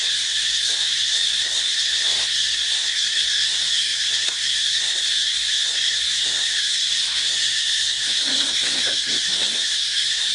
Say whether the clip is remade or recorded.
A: remade